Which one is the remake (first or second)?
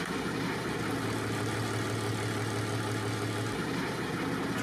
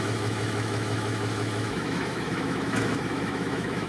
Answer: second